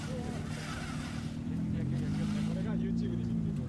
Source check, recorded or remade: recorded